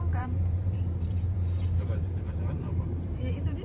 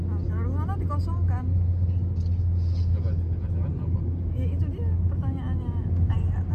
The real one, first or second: second